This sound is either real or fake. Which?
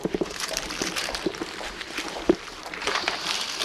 fake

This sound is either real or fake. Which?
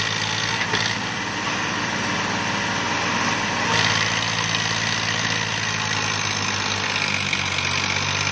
real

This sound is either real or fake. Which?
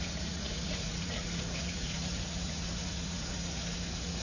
fake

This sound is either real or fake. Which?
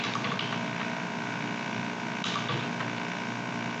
real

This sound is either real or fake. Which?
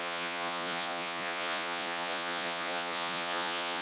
fake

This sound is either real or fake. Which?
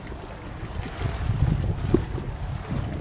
real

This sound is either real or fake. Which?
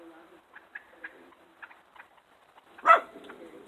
real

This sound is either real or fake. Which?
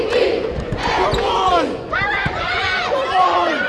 fake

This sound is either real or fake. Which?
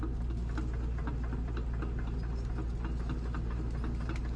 real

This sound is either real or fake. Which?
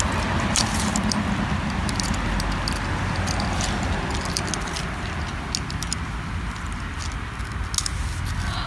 real